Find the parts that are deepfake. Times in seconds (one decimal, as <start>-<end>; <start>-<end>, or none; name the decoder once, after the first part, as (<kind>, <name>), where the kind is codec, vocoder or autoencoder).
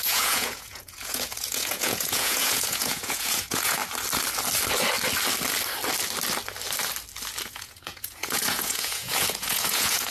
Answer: 0.0-3.8 (vocoder, Vocos); 7.4-10.1